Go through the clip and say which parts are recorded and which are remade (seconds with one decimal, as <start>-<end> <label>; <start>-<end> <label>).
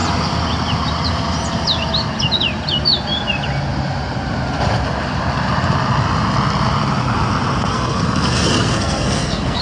0.0-7.7 recorded; 7.7-9.6 remade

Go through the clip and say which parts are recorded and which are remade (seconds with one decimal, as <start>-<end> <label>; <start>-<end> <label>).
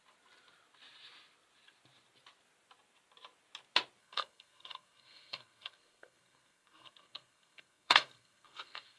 0.0-4.0 recorded; 4.0-9.0 remade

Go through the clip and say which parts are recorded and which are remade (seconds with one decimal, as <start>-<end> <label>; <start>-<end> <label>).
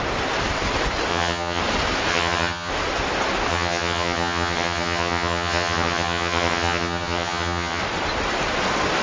0.0-1.1 recorded; 1.1-1.6 remade; 1.6-2.1 recorded; 2.1-2.7 remade; 2.7-3.5 recorded; 3.5-7.8 remade; 7.8-9.0 recorded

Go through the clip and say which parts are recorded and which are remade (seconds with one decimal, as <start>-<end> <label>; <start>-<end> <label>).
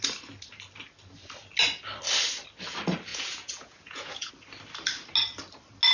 0.0-3.1 recorded; 3.1-4.3 remade; 4.3-5.9 recorded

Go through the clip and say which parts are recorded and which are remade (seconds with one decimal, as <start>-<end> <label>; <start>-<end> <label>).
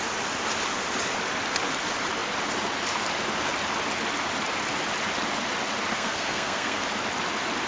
0.0-5.9 recorded; 5.9-6.8 remade; 6.8-7.7 recorded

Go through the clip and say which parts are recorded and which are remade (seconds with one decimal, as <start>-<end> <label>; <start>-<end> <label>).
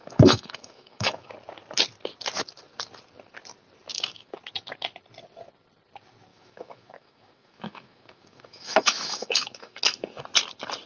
0.0-1.3 remade; 1.3-3.9 recorded; 3.9-4.4 remade; 4.4-6.3 recorded; 6.3-10.2 remade; 10.2-10.9 recorded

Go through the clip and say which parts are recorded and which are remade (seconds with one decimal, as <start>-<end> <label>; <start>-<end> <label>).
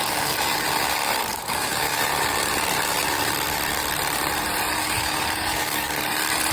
0.0-1.3 recorded; 1.3-2.0 remade; 2.0-4.8 recorded; 4.8-6.0 remade; 6.0-6.5 recorded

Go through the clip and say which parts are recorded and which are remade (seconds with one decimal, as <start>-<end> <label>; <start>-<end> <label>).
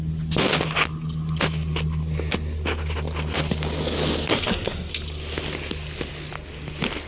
0.0-4.3 recorded; 4.3-4.9 remade; 4.9-7.1 recorded